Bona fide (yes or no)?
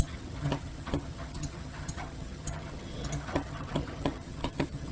no